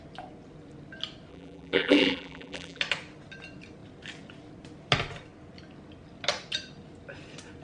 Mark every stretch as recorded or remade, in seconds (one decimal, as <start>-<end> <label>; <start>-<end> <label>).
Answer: 0.0-1.3 recorded; 1.3-2.8 remade; 2.8-7.6 recorded